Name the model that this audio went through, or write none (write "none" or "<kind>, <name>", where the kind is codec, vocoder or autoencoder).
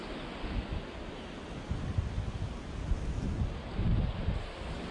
none